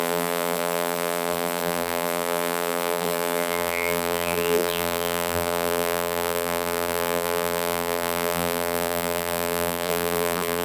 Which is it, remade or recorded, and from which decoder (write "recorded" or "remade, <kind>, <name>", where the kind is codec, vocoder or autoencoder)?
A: remade, vocoder, BigVGAN v2